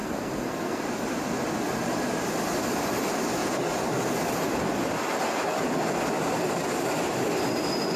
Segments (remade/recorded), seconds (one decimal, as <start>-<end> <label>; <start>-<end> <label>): 0.0-0.8 remade; 0.8-8.0 recorded